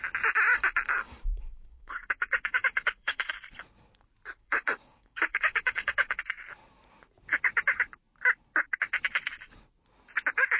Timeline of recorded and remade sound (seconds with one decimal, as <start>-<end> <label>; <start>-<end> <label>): 0.0-0.5 recorded; 0.5-3.3 remade; 3.3-4.4 recorded; 4.4-6.2 remade; 6.2-10.6 recorded